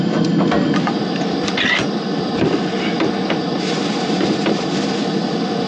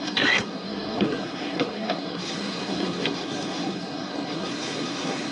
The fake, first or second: second